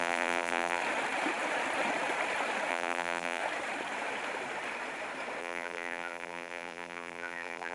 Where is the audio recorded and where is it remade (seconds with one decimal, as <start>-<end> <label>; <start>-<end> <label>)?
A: 0.0-0.8 remade; 0.8-2.7 recorded; 2.7-3.4 remade; 3.4-5.4 recorded; 5.4-7.7 remade